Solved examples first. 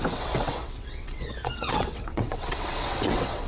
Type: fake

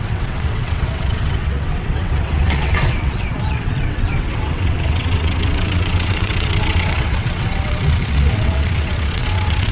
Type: fake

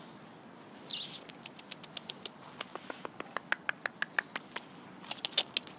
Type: real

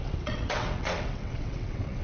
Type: fake